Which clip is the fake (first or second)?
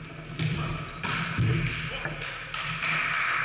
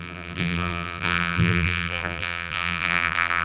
second